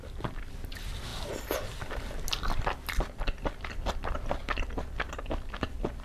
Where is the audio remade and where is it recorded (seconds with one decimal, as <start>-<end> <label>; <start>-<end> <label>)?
0.0-1.1 recorded; 1.1-4.7 remade; 4.7-6.0 recorded